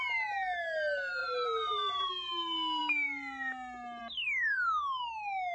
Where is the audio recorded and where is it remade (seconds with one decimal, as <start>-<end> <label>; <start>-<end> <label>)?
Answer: 0.0-1.2 recorded; 1.2-2.1 remade; 2.1-5.5 recorded